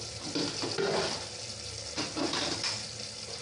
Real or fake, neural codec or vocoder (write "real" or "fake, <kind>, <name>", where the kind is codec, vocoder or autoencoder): real